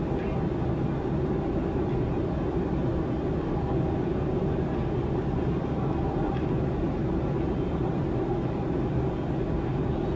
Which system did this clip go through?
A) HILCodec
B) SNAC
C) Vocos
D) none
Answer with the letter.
D